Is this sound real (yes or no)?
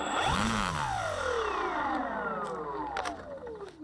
yes